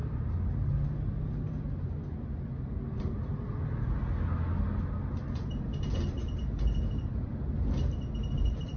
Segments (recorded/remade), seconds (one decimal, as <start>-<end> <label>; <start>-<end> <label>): 0.0-8.8 recorded